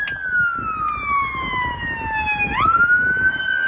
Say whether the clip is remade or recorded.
recorded